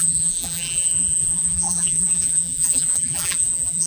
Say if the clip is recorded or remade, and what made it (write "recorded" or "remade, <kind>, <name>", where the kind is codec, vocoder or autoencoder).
remade, vocoder, BigVGAN v2